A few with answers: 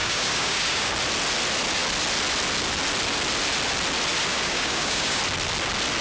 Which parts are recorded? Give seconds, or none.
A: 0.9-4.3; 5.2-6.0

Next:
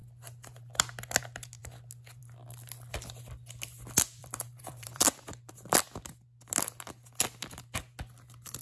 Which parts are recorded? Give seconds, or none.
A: 0.0-4.2; 5.5-8.6